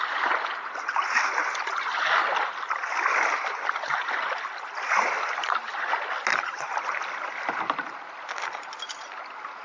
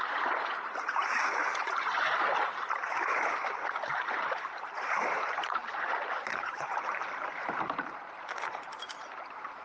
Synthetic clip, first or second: second